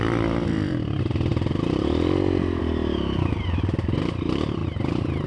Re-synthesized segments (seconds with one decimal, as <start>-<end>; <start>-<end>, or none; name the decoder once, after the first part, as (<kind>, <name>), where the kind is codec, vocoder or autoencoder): none